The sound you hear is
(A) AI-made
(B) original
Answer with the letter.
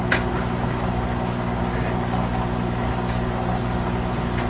B